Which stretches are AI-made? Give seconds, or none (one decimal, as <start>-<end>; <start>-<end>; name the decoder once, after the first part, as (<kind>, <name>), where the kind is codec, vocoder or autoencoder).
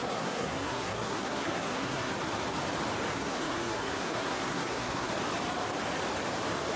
0.0-2.1 (codec, SNAC); 3.1-5.1